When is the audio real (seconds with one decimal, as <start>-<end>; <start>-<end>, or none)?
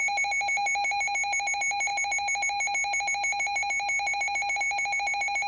0.0-5.5